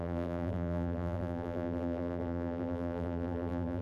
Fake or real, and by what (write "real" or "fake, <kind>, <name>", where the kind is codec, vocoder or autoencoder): fake, vocoder, BigVGAN v2